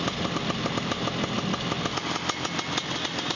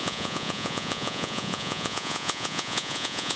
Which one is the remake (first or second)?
second